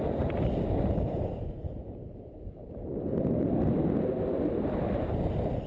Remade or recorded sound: recorded